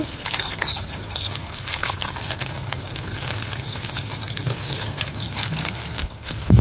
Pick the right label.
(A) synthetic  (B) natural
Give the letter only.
A